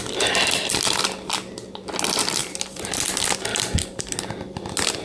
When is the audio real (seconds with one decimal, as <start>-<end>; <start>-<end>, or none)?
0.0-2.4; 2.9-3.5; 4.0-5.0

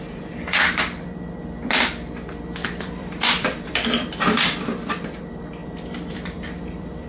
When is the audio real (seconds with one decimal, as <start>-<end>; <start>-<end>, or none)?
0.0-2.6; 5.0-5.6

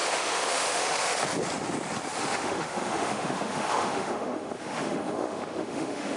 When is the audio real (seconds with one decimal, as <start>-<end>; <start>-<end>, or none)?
1.2-2.2

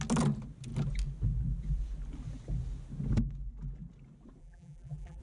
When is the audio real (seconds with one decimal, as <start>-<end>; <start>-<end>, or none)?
0.0-4.4